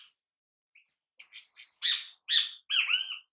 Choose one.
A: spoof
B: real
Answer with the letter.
B